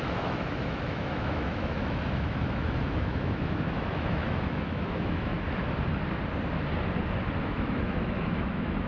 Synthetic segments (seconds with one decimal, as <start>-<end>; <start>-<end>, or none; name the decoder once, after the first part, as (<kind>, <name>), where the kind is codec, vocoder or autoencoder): 0.0-5.3 (autoencoder, DAC-VAE); 7.4-8.9

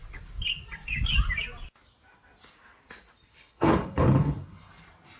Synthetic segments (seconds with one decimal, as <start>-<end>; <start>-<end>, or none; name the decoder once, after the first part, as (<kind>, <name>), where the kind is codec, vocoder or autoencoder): 3.3-4.7 (codec, HILCodec)

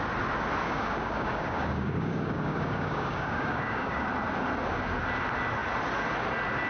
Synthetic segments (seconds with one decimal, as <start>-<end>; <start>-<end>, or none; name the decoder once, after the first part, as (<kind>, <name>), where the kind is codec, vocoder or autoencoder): 0.6-4.1 (codec, DAC)